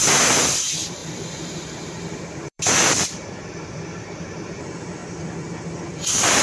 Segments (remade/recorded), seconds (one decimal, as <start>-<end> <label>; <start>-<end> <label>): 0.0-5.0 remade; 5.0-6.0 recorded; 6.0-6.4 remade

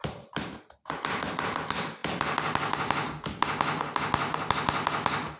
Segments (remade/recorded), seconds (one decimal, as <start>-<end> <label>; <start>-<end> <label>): 0.0-5.4 recorded

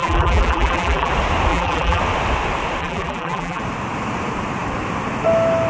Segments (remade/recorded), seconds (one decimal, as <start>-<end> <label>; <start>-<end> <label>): 0.0-1.1 remade; 1.1-1.5 recorded; 1.5-2.0 remade; 2.0-2.8 recorded; 2.8-3.6 remade; 3.6-5.7 recorded

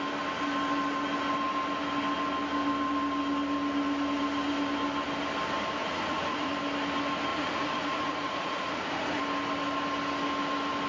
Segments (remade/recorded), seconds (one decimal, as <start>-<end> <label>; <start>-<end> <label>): 0.0-5.8 recorded; 5.8-6.5 remade; 6.5-7.3 recorded; 7.3-9.2 remade; 9.2-10.9 recorded